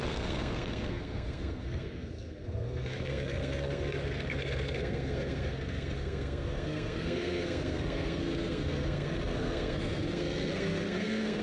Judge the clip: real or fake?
fake